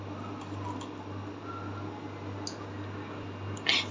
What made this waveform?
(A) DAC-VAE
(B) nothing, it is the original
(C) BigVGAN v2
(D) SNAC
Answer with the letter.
B